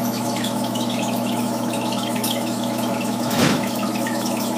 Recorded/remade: remade